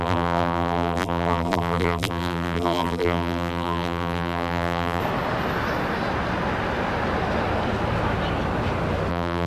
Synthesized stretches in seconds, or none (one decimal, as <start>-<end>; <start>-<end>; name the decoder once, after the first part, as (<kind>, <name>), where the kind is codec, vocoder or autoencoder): 0.0-5.0 (vocoder, BigVGAN v2); 9.1-9.5